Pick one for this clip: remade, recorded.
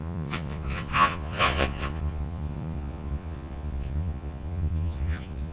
remade